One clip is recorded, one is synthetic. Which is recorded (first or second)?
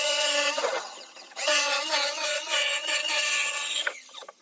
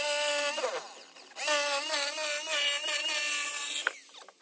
second